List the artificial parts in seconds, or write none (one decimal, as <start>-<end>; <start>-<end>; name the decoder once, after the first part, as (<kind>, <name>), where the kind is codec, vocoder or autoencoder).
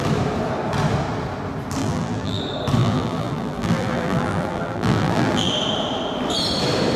1.8-2.4 (vocoder, BigVGAN v2); 2.8-5.5